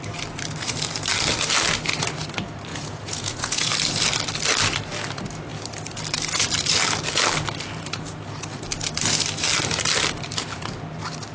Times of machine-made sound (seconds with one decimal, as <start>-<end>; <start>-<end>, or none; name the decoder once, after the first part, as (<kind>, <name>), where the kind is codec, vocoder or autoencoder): 2.7-3.7 (vocoder, Vocos)